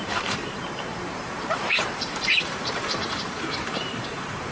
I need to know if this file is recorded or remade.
remade